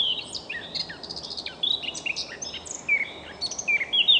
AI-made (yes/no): no